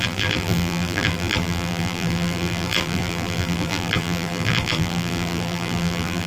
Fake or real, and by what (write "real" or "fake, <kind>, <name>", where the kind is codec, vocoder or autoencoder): fake, vocoder, BigVGAN v2